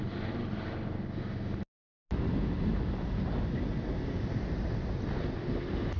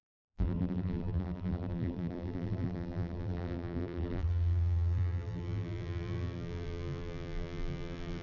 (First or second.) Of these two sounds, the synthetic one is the second